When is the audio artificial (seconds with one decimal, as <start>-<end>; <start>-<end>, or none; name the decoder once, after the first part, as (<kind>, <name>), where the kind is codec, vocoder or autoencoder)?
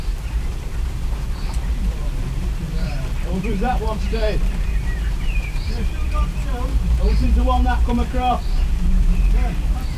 0.0-10.0 (vocoder, BigVGAN v2)